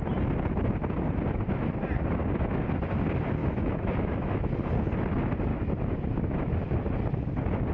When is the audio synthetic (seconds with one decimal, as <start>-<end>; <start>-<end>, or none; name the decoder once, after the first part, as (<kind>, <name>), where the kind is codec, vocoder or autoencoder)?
3.4-4.5 (autoencoder, DAC-VAE); 5.5-6.5